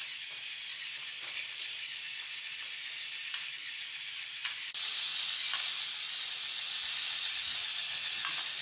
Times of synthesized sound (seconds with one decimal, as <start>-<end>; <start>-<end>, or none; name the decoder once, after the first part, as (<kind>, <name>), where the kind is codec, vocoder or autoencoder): none